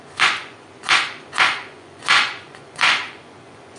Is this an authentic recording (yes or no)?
no